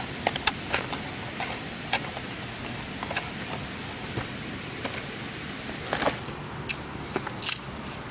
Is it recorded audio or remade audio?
recorded